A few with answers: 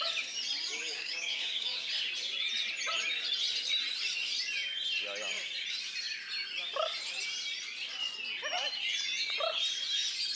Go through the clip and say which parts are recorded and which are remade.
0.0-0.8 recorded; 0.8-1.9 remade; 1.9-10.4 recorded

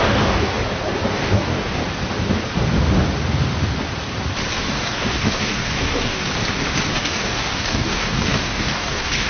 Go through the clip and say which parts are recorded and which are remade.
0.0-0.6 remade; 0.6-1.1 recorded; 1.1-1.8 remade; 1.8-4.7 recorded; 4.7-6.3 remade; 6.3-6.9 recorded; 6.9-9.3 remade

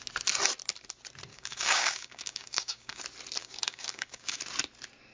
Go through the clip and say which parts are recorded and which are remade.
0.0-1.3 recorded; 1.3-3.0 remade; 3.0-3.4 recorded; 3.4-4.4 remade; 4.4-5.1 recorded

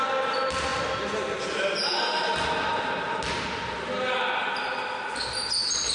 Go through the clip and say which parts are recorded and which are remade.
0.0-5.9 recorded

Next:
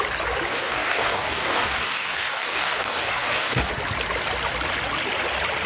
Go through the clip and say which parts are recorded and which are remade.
0.0-0.5 recorded; 0.5-3.7 remade; 3.7-5.7 recorded